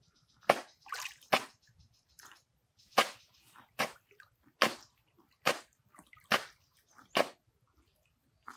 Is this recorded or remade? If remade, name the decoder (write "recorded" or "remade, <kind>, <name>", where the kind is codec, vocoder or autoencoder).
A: recorded